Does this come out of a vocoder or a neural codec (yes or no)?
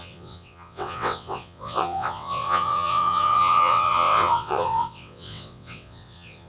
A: yes